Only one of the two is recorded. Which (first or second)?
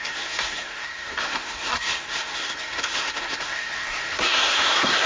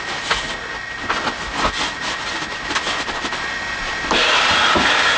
second